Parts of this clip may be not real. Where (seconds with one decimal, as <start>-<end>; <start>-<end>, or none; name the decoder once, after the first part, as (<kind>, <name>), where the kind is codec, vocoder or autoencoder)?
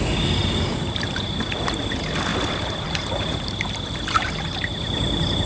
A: 0.4-1.8 (vocoder, BigVGAN v2); 2.3-4.3